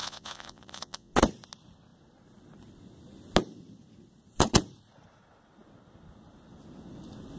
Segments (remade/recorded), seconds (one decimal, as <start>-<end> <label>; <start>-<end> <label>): 0.0-1.1 remade; 1.1-7.4 recorded